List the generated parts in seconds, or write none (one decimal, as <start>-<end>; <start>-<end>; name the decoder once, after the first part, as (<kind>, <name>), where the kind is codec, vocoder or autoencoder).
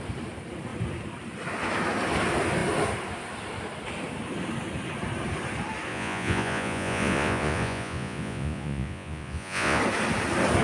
5.9-9.8 (vocoder, Vocos)